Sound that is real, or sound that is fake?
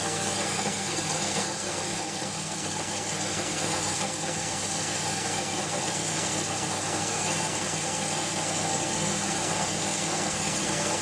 fake